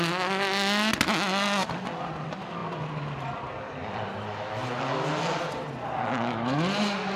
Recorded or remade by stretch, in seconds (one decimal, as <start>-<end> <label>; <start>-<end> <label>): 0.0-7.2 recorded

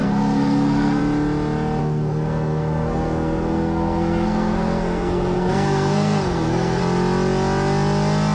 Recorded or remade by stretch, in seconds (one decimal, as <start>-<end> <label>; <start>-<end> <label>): 0.0-1.0 remade; 1.0-1.8 recorded; 1.8-6.8 remade; 6.8-8.3 recorded

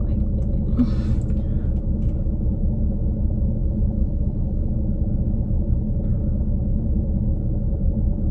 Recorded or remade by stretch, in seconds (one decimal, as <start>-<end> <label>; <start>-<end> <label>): 0.0-3.6 recorded; 3.6-4.7 remade; 4.7-8.3 recorded

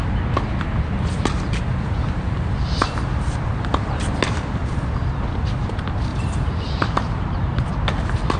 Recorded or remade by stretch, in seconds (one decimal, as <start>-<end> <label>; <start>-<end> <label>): 0.0-6.1 recorded; 6.1-7.7 remade; 7.7-8.4 recorded

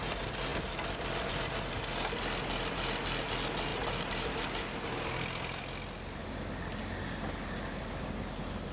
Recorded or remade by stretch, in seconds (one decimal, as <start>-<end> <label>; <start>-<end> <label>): 0.0-8.7 recorded

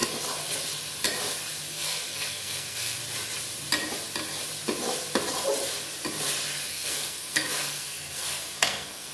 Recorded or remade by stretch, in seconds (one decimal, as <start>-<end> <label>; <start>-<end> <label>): 0.0-1.7 recorded; 1.7-3.0 remade; 3.0-6.7 recorded; 6.7-9.1 remade